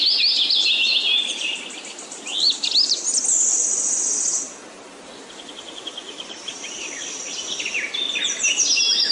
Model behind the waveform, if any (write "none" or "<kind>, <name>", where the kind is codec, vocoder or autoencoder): none